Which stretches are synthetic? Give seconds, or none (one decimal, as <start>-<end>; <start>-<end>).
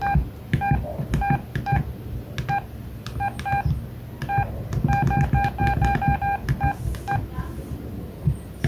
none